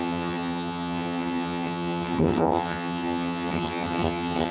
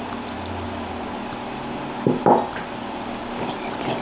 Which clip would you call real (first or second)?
second